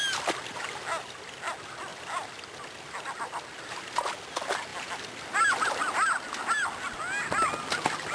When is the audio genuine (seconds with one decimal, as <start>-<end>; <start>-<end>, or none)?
0.0-8.1